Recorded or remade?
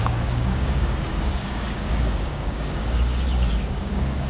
remade